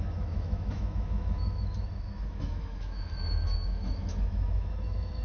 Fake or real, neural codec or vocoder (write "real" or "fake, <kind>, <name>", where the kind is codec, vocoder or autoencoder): fake, autoencoder, DAC-VAE